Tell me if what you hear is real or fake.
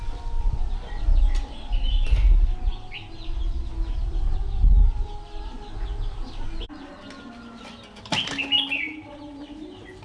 real